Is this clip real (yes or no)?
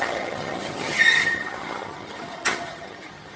no